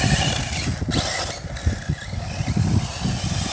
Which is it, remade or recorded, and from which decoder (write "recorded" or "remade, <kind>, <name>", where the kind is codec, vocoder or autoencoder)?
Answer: recorded